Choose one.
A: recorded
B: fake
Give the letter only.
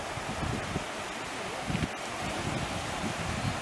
A